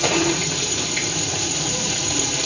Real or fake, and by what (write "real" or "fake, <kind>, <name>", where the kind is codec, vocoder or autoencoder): fake, vocoder, Vocos